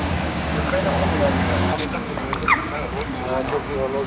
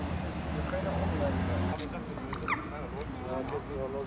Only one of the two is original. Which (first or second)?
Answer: second